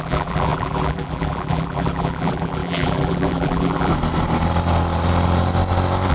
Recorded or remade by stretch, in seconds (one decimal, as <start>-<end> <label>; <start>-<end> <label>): 0.0-3.9 remade; 3.9-6.1 recorded